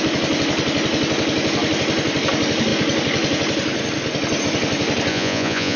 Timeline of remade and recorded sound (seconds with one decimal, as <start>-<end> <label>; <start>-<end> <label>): 0.0-5.1 recorded; 5.1-5.8 remade